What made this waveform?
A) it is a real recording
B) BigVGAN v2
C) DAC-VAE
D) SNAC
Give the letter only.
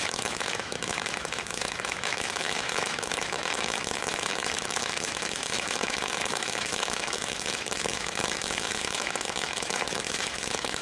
C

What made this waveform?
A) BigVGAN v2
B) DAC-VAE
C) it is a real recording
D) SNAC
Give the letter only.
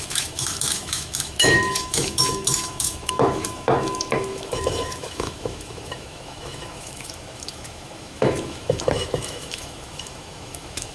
B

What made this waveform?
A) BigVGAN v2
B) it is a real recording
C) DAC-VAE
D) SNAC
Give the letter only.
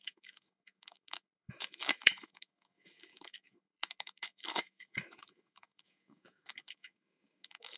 C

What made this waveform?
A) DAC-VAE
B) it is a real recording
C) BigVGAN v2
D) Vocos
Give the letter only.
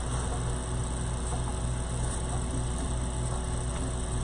B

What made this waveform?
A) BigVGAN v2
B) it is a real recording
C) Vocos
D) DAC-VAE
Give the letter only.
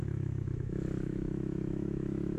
D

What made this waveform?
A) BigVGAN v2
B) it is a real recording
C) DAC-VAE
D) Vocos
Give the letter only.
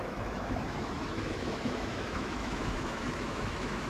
C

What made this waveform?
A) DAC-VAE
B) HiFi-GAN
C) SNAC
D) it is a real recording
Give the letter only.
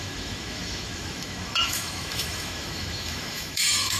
A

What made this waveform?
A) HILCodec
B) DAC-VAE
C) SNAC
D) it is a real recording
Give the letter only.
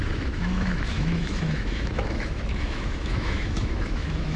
B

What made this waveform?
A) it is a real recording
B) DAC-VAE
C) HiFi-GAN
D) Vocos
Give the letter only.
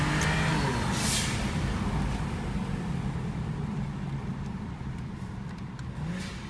A